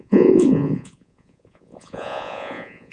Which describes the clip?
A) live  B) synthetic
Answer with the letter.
B